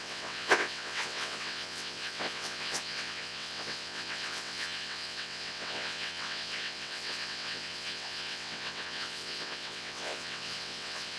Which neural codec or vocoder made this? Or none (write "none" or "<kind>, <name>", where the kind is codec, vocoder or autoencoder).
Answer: vocoder, WaveNeXt